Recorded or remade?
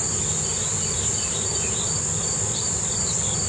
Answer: recorded